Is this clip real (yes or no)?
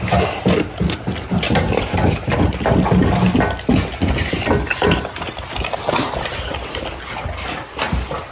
yes